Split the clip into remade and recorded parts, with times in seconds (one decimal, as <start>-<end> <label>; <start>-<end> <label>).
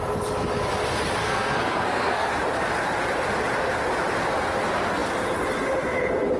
0.0-1.2 recorded; 1.2-2.3 remade; 2.3-6.4 recorded